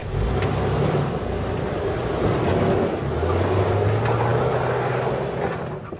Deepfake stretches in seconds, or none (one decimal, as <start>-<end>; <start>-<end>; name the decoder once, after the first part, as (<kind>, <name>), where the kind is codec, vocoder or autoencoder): none

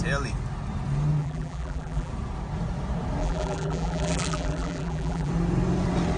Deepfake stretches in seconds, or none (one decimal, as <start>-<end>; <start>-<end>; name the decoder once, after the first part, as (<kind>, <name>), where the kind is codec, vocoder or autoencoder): 1.2-2.1 (vocoder, BigVGAN v2); 3.2-5.3

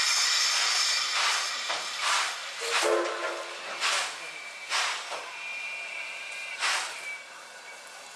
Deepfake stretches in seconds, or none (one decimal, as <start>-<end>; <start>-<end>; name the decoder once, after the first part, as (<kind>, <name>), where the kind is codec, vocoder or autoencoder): none

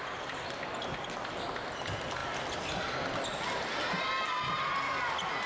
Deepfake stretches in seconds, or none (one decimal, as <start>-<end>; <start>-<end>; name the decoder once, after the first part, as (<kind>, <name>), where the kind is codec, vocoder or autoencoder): none

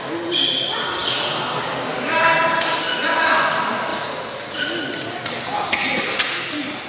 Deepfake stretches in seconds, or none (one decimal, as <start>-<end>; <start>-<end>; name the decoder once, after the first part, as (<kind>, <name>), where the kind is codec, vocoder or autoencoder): 3.0-3.5 (vocoder, Vocos)

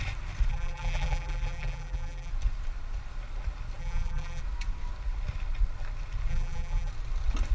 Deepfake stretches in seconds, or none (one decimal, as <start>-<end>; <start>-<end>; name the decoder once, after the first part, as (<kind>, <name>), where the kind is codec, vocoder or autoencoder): 0.5-2.3 (vocoder, BigVGAN v2); 3.8-4.4; 6.3-6.9